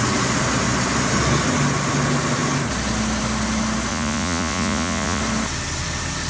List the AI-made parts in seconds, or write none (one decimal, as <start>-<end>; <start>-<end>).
3.9-5.2